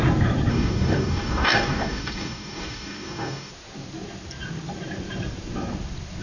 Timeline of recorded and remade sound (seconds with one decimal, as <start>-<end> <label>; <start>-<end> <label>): 0.0-0.5 recorded; 0.5-3.5 remade; 3.5-6.2 recorded